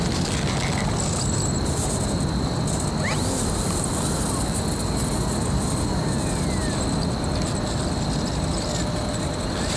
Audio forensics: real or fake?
real